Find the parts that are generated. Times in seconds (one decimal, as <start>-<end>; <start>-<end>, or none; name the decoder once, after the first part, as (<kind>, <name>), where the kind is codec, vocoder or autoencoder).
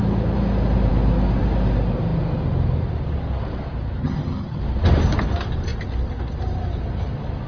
4.0-4.6 (vocoder, HiFi-GAN)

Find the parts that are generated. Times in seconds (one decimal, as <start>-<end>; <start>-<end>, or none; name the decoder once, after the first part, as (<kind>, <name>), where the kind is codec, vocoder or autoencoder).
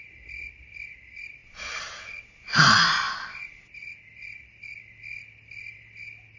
none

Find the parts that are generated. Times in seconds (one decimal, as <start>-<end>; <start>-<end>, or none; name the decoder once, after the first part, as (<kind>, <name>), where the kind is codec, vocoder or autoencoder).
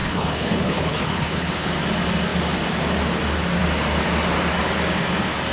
0.0-1.7 (codec, HILCodec)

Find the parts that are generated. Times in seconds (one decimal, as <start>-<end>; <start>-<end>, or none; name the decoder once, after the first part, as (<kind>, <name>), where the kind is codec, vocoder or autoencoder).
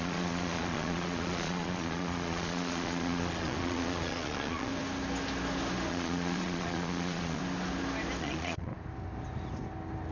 0.0-4.7 (vocoder, Vocos); 5.9-7.4; 8.2-8.7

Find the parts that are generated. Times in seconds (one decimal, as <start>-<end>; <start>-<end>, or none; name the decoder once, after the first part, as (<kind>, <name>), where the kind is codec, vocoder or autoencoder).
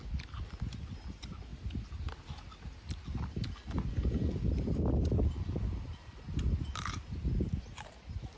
none